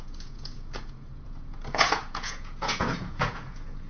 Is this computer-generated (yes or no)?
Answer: yes